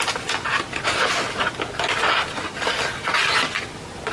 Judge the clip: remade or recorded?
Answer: recorded